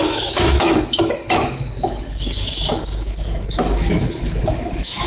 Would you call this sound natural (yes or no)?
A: no